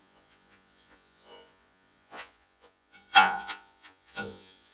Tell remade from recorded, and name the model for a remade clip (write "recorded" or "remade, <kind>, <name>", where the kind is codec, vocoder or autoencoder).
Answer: remade, vocoder, Vocos